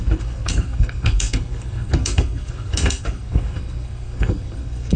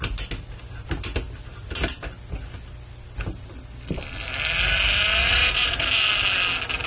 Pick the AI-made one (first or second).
first